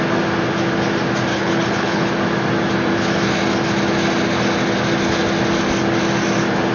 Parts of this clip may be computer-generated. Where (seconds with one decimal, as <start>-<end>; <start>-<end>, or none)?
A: 1.3-2.1

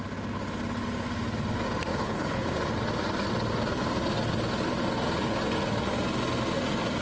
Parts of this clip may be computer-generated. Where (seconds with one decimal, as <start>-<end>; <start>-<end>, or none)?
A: 1.9-2.5

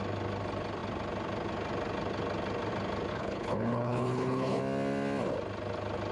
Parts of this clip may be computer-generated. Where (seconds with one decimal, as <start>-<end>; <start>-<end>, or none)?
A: 3.1-4.6